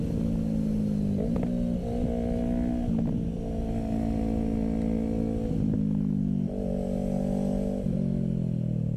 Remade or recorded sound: recorded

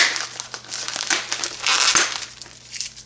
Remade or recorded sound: recorded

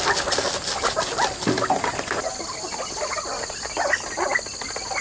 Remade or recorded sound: recorded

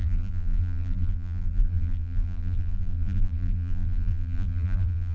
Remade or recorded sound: remade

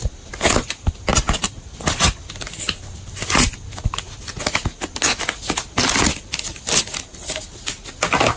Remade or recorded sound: recorded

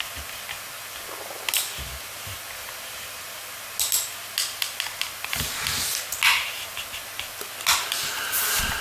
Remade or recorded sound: recorded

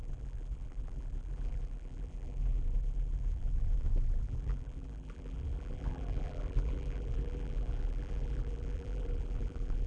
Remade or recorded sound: remade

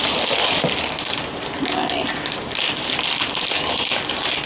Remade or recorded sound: recorded